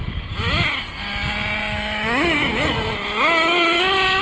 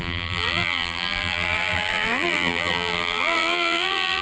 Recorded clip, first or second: first